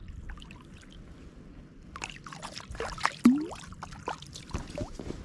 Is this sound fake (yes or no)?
no